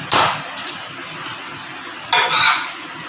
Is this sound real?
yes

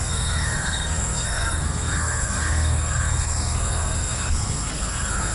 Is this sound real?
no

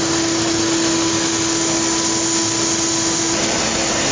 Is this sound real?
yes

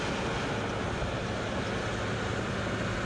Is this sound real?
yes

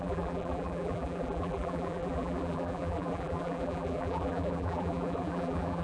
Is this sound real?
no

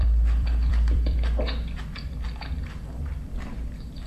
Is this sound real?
no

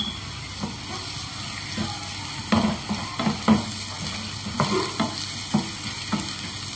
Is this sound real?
yes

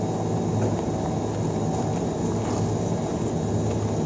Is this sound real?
yes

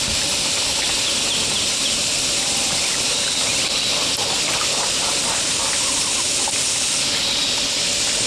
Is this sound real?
yes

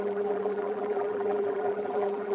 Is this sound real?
no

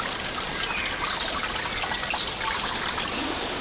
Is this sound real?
yes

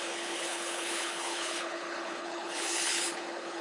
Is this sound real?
no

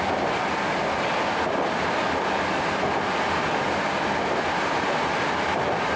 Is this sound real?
yes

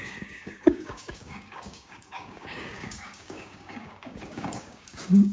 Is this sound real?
no